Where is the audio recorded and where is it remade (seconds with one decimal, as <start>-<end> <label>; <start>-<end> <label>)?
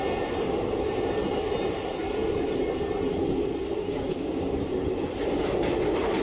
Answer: 0.0-3.8 recorded; 3.8-4.7 remade; 4.7-6.2 recorded